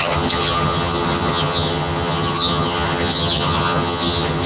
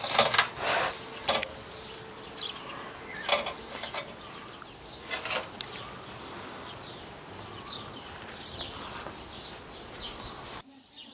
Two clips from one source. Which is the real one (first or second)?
second